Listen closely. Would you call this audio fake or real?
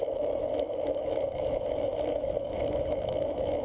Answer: fake